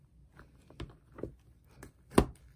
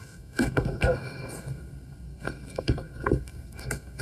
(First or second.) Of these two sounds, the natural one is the first